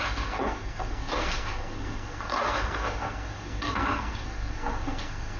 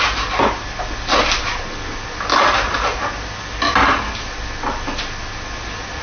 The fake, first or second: first